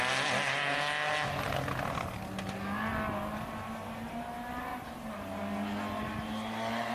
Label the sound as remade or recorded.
recorded